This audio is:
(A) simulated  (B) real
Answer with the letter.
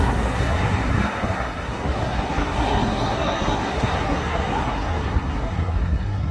A